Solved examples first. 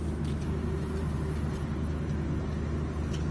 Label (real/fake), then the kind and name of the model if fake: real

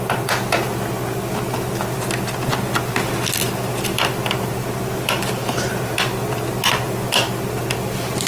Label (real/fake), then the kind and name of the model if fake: real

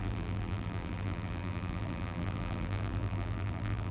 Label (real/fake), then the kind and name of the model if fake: fake, vocoder, BigVGAN v2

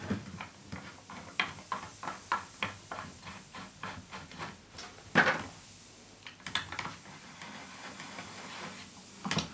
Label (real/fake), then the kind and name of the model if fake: real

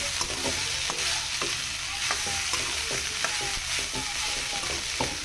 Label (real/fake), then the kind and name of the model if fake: real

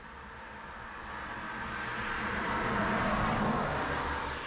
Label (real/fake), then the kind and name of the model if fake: real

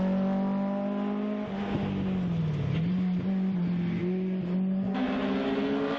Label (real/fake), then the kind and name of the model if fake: real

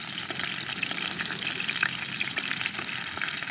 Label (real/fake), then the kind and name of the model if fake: fake, vocoder, BigVGAN v2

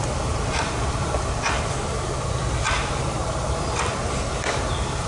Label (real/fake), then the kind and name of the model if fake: fake, vocoder, BigVGAN v2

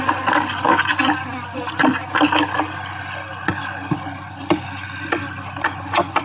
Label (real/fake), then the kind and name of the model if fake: real